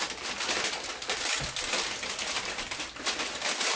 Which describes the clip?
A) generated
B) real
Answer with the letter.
B